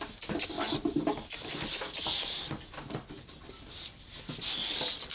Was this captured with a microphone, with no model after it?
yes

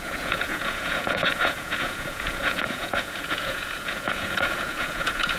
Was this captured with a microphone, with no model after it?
no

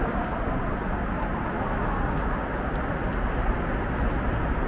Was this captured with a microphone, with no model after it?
yes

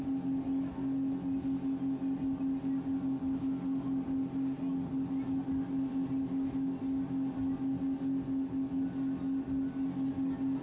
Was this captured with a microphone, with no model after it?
yes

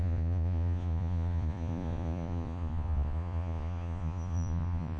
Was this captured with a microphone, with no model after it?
no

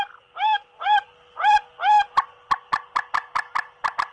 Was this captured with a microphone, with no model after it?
yes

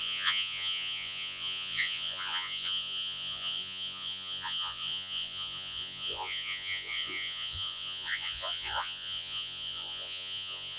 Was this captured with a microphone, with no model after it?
no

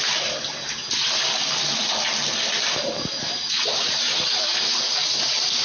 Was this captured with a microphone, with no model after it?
yes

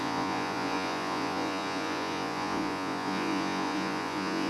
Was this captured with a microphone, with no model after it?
no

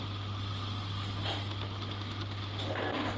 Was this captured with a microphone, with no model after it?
yes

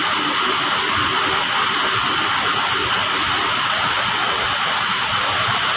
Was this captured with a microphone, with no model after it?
yes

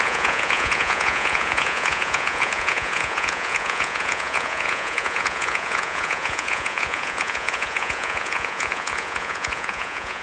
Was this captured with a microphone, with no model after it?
no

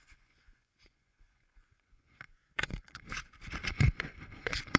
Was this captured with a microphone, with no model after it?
no